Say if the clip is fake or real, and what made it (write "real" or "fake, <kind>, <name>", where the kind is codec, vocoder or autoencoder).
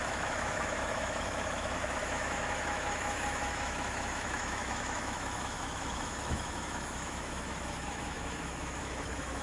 fake, autoencoder, DAC-VAE